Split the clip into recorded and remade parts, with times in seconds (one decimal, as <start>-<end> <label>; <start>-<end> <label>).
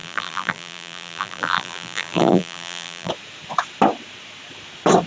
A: 0.0-3.1 remade; 3.1-5.1 recorded